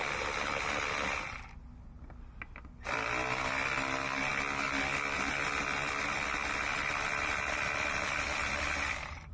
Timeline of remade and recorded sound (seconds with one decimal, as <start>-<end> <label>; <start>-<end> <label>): 0.0-9.3 recorded